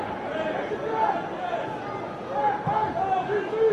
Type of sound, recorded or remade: recorded